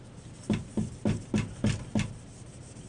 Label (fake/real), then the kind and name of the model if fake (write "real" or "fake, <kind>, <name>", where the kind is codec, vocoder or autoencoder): real